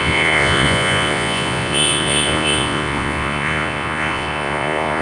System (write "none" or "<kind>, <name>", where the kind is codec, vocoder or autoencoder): vocoder, Vocos